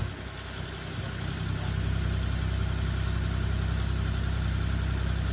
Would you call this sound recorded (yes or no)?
yes